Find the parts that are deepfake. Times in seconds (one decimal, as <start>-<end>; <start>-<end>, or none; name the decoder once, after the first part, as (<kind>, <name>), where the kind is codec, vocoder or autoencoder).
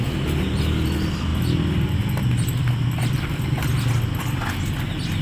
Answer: none